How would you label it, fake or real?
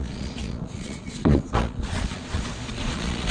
fake